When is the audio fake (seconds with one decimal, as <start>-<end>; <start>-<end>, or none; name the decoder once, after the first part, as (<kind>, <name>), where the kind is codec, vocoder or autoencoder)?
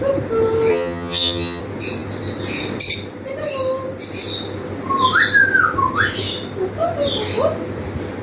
0.7-1.6 (vocoder, HiFi-GAN)